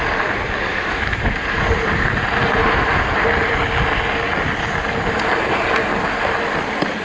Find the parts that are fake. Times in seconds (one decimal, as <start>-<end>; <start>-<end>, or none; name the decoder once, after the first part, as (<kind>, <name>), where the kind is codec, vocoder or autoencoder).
0.7-1.2 (autoencoder, DAC-VAE)